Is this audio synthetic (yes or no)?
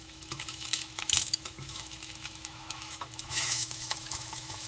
yes